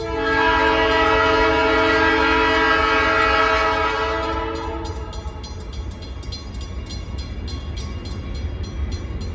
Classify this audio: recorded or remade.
recorded